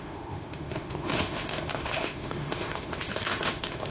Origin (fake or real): fake